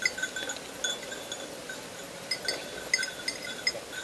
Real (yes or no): yes